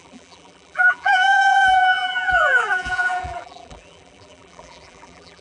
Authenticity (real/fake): fake